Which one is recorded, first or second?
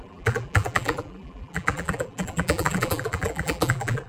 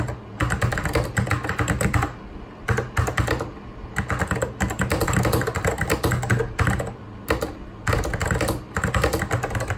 second